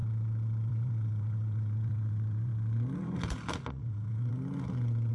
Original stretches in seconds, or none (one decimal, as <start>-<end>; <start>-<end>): 0.0-0.7; 2.5-3.7; 4.3-5.1